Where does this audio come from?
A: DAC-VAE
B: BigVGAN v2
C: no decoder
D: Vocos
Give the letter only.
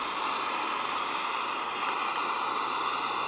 C